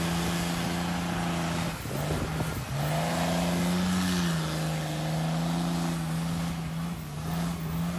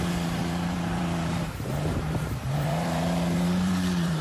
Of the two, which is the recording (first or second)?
first